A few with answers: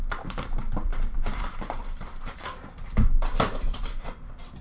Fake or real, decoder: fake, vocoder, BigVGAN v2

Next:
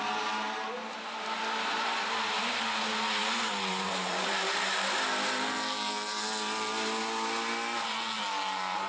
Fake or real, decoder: real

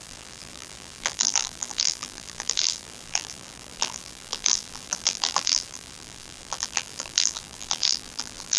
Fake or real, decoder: fake, vocoder, BigVGAN v2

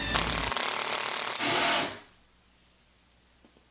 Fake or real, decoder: real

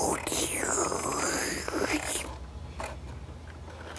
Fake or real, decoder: real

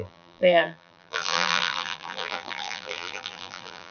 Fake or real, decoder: fake, vocoder, BigVGAN v2